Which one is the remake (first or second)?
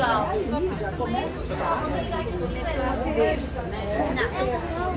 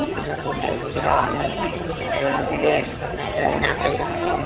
second